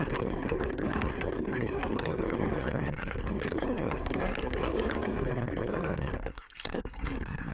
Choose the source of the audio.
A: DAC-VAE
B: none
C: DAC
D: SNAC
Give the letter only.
D